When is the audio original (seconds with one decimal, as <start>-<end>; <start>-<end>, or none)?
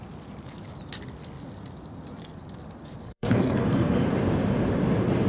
0.0-3.0; 4.1-5.3